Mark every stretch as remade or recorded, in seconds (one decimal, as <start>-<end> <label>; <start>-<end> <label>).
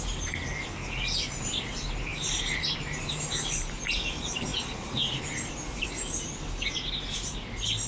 0.0-2.1 recorded; 2.1-3.8 remade; 3.8-7.9 recorded